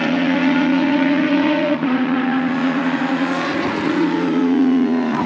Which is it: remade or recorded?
remade